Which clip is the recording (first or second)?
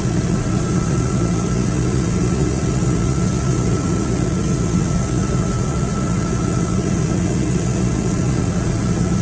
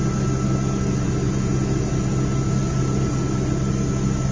second